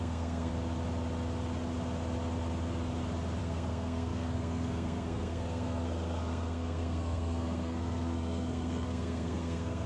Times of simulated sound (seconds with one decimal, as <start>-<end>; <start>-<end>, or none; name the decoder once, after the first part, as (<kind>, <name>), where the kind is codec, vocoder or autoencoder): 0.0-0.5 (codec, SNAC); 3.4-9.9